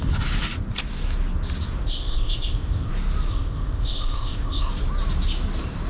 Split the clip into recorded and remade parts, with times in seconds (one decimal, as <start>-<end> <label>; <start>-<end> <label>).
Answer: 0.0-1.8 recorded; 1.8-2.9 remade; 2.9-3.3 recorded; 3.3-4.7 remade; 4.7-5.9 recorded